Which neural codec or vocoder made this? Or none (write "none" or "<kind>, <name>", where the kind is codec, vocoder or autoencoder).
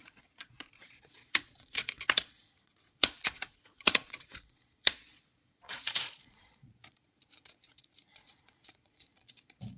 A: vocoder, Vocos